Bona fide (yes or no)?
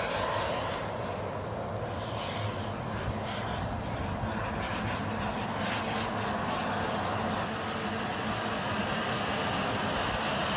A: yes